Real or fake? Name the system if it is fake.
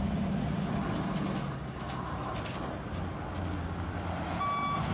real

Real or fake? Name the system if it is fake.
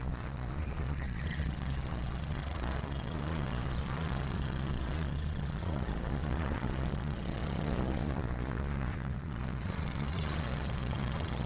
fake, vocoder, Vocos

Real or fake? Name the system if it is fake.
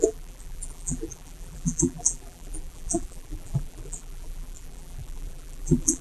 fake, vocoder, BigVGAN v2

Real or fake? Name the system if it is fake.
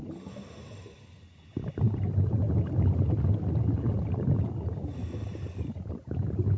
real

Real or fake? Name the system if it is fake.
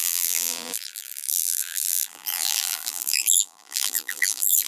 fake, vocoder, BigVGAN v2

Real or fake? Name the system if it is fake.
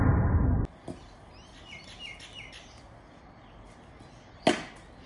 real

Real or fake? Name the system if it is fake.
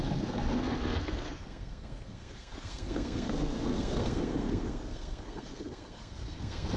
fake, codec, SNAC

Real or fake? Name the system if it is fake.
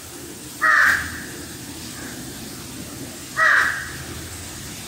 real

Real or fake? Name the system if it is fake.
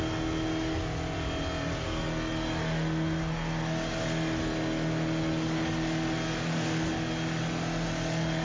real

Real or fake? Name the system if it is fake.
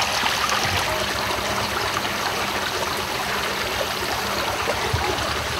real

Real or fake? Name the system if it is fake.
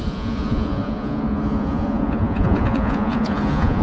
fake, vocoder, Vocos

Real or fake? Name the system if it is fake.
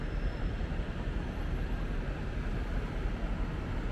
fake, vocoder, BigVGAN v2